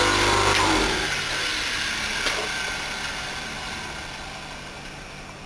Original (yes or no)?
yes